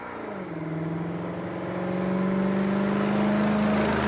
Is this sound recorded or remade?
recorded